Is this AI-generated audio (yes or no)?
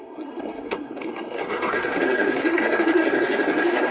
yes